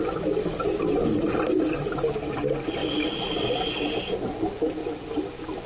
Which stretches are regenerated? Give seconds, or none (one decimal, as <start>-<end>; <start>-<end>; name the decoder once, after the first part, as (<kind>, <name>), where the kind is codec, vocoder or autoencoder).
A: none